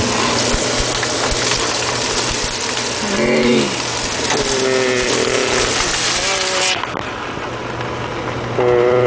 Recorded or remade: recorded